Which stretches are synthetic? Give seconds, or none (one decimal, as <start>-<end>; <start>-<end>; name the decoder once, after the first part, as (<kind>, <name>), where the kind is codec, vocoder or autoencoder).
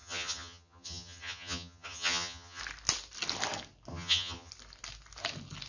0.0-2.6 (vocoder, HiFi-GAN); 3.9-4.5